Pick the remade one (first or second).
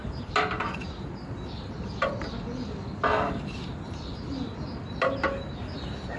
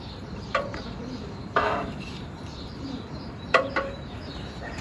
second